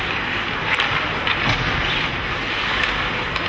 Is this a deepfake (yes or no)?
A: no